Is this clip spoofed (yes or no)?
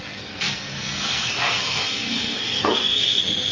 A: yes